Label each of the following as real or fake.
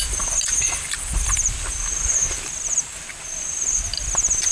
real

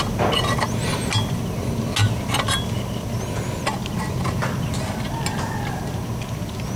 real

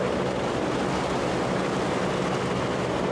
real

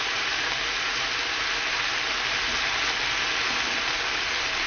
real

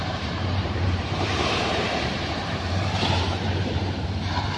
fake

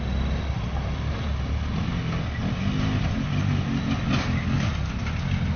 real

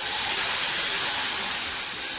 real